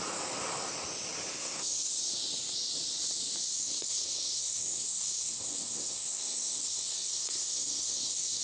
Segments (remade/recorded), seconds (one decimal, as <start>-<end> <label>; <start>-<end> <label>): 0.0-1.3 recorded; 1.3-1.9 remade; 1.9-3.5 recorded; 3.5-8.4 remade